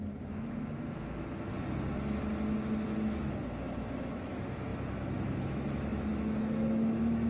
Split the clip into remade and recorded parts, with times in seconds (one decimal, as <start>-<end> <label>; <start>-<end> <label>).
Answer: 0.0-1.5 remade; 1.5-4.0 recorded; 4.0-7.3 remade